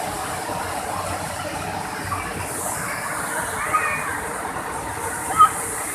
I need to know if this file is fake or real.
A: real